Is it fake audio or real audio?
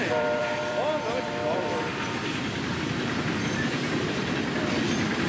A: fake